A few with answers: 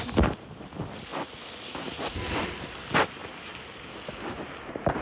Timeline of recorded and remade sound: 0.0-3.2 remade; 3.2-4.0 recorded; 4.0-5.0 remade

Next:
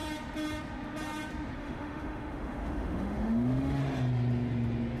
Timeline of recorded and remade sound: 0.0-1.6 recorded; 1.6-3.8 remade; 3.8-5.0 recorded

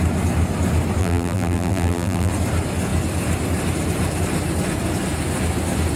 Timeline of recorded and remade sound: 0.0-1.0 recorded; 1.0-2.3 remade; 2.3-6.0 recorded

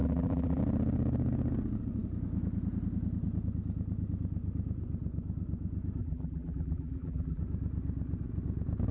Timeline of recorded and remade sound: 0.0-0.6 remade; 0.6-6.0 recorded; 6.0-7.4 remade; 7.4-8.9 recorded

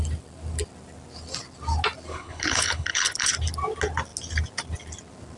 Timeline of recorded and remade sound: 0.0-2.1 recorded; 2.1-3.3 remade; 3.3-5.4 recorded

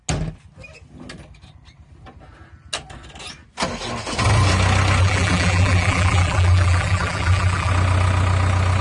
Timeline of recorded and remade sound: 0.0-5.0 recorded; 5.0-7.7 remade; 7.7-8.8 recorded

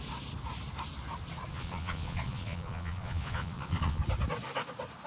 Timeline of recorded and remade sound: 0.0-1.5 recorded; 1.5-4.0 remade; 4.0-5.1 recorded

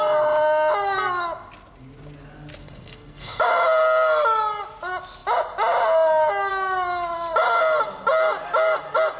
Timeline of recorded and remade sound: 0.0-2.6 recorded; 2.6-3.4 remade; 3.4-9.2 recorded